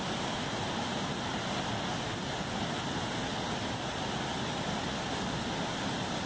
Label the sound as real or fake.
real